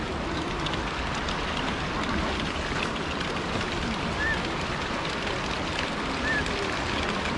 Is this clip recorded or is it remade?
recorded